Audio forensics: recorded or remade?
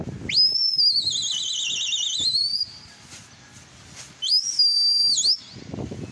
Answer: recorded